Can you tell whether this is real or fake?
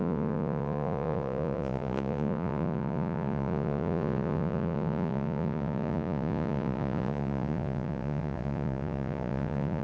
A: fake